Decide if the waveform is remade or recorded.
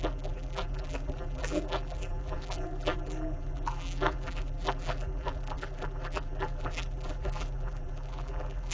remade